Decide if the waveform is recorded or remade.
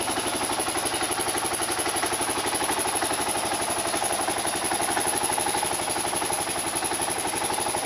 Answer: recorded